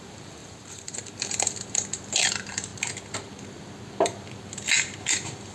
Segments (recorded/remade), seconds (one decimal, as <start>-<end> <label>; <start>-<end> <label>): 0.0-2.7 remade; 2.7-5.5 recorded